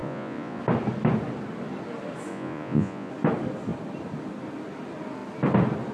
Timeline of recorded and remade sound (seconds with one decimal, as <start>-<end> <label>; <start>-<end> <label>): 0.0-0.6 remade; 0.6-2.3 recorded; 2.3-3.1 remade; 3.1-5.9 recorded